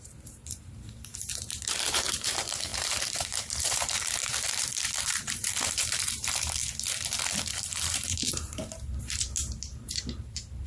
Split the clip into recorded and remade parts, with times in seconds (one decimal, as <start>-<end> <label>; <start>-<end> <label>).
0.0-6.6 remade; 6.6-7.6 recorded; 7.6-10.7 remade